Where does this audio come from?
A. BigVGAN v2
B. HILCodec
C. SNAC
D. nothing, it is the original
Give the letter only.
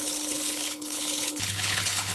B